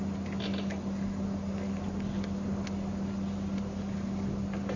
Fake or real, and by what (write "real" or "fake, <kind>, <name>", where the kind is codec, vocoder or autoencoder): real